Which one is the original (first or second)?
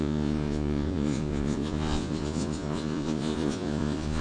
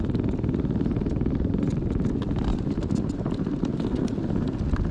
second